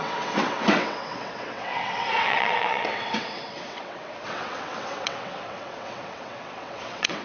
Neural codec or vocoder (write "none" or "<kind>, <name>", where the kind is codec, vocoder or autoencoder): vocoder, WaveNeXt